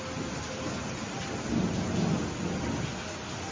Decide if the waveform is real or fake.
real